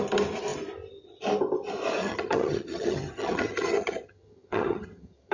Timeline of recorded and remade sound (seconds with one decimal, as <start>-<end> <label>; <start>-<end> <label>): 0.0-2.0 recorded; 2.0-5.3 remade

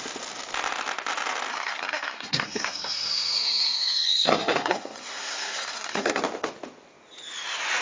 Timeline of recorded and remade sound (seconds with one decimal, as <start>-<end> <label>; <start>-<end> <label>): 0.0-1.5 recorded; 1.5-6.2 remade; 6.2-7.8 recorded

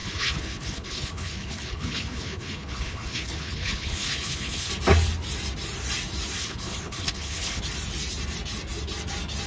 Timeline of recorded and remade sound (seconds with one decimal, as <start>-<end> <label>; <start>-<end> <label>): 0.0-4.7 remade; 4.7-6.4 recorded; 6.4-7.6 remade; 7.6-9.5 recorded

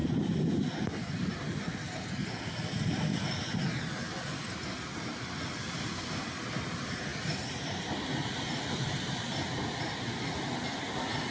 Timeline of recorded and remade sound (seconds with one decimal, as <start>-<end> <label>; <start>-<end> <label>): 0.0-11.3 recorded

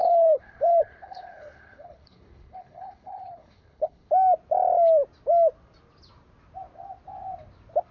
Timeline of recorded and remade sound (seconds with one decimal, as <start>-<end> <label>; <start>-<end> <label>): 0.0-4.1 remade; 4.1-7.9 recorded

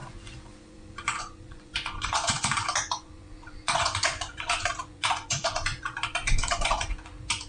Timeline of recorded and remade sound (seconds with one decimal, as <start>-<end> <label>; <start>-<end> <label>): 0.0-7.5 remade